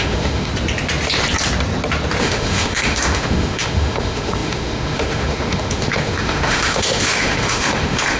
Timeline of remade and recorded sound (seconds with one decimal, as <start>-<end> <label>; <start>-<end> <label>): 0.0-0.5 remade; 0.5-2.2 recorded; 2.2-8.2 remade